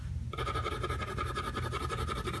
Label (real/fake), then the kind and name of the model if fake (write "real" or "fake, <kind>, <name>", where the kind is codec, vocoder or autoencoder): fake, vocoder, BigVGAN v2